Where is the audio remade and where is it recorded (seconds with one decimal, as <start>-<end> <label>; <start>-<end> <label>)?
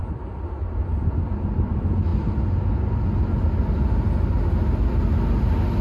0.0-5.8 recorded